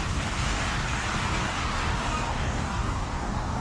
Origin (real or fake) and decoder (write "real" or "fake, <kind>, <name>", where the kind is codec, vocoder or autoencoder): fake, codec, DAC